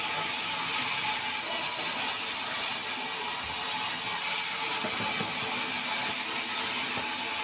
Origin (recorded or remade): recorded